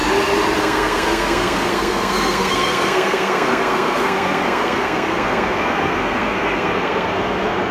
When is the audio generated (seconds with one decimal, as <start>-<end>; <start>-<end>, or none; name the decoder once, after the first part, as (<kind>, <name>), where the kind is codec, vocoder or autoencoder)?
0.6-7.7 (codec, SNAC)